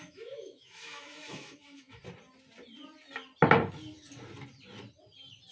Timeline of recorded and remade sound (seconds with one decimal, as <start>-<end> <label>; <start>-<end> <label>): 0.0-2.0 remade; 2.0-5.5 recorded